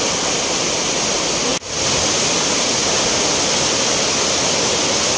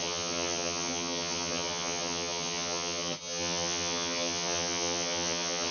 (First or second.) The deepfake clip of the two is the second